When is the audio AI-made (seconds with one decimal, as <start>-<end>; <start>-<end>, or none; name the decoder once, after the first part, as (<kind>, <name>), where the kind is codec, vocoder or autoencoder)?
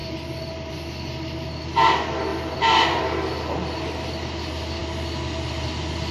2.3-3.0 (vocoder, BigVGAN v2)